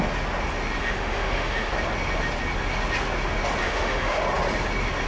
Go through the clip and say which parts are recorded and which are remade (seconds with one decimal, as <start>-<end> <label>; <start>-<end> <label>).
0.0-0.8 recorded; 0.8-1.7 remade; 1.7-3.6 recorded; 3.6-4.2 remade; 4.2-5.1 recorded